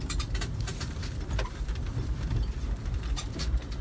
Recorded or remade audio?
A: remade